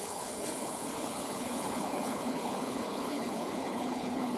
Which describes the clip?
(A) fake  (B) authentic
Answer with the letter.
A